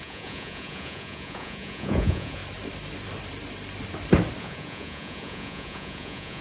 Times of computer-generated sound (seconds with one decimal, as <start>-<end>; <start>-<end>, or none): 0.0-2.4; 4.4-6.4